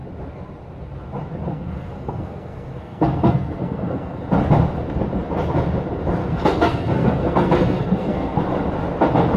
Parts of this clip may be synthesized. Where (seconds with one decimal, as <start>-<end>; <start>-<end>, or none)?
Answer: 1.5-4.2; 6.2-8.4